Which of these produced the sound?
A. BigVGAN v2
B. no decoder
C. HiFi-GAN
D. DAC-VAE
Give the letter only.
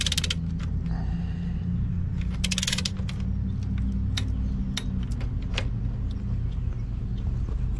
B